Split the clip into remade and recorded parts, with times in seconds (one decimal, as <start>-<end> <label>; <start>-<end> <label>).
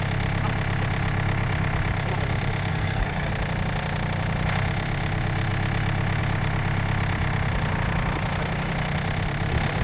0.0-2.7 recorded; 2.7-3.3 remade; 3.3-9.8 recorded